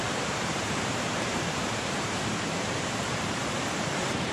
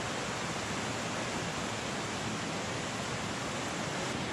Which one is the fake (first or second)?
first